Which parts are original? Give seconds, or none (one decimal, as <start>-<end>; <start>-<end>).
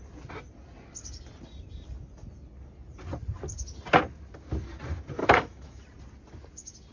0.0-5.2; 5.8-6.9